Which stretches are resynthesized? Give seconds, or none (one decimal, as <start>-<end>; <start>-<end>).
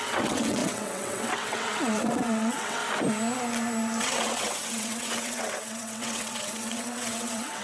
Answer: 0.0-2.8; 4.0-7.6